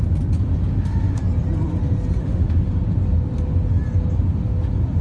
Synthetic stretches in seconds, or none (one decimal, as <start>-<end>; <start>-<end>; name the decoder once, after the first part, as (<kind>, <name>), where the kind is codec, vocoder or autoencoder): 0.7-1.2 (autoencoder, DAC-VAE); 2.2-2.7